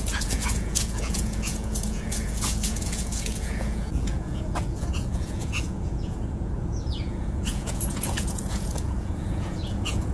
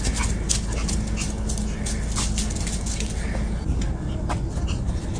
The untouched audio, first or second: second